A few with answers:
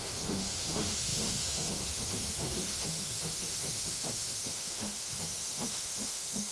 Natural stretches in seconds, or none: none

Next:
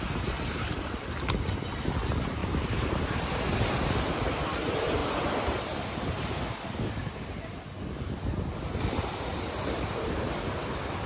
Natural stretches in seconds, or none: 0.0-2.4; 3.4-9.3; 9.8-11.1

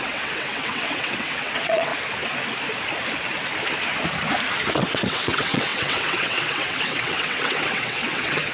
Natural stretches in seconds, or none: 1.9-4.7

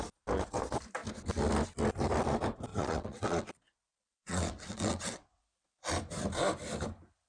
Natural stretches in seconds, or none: 0.0-2.7; 3.5-4.2; 5.4-7.3

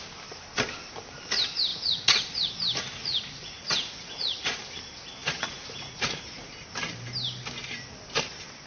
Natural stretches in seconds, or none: 0.0-1.7; 2.5-3.0; 4.6-5.2; 6.5-8.7

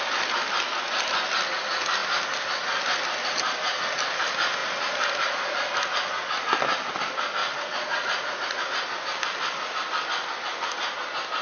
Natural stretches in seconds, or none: 0.0-7.4; 8.6-11.4

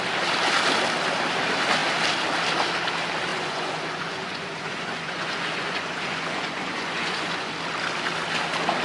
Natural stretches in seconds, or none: 0.0-3.3; 7.5-8.8

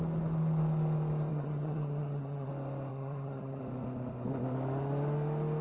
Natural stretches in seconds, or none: 0.0-1.3; 2.5-2.9; 3.6-5.6